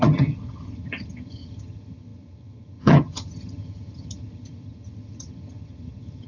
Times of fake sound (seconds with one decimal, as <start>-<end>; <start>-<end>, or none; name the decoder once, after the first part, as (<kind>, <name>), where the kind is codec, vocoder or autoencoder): 0.0-6.3 (vocoder, HiFi-GAN)

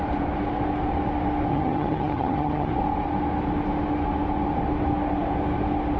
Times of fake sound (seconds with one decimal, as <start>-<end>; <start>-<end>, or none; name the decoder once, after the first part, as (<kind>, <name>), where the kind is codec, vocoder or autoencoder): 1.5-2.7 (vocoder, HiFi-GAN)

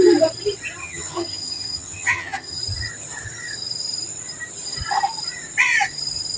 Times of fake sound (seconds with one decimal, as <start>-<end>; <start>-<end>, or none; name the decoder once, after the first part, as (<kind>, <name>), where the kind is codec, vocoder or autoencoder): 0.8-2.6 (vocoder, HiFi-GAN)

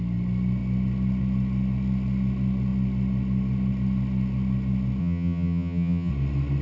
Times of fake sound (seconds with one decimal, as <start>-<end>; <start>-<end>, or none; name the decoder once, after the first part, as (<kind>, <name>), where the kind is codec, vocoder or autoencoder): 5.0-6.1 (vocoder, HiFi-GAN)

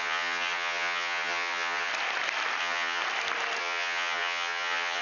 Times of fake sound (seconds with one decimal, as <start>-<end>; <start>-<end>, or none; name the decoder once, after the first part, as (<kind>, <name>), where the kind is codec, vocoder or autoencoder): 0.0-1.9 (vocoder, HiFi-GAN); 2.6-3.0; 3.6-5.0

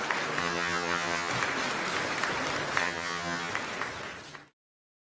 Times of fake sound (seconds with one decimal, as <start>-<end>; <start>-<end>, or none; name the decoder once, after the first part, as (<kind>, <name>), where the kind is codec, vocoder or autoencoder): 0.4-1.3 (vocoder, HiFi-GAN); 2.8-3.5